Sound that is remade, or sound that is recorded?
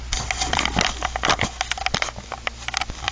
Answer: recorded